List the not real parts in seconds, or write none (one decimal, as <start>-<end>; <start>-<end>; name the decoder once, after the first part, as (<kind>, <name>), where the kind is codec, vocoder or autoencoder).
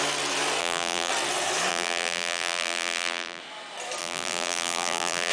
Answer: 0.6-1.1 (vocoder, BigVGAN v2); 1.7-3.4; 4.0-5.3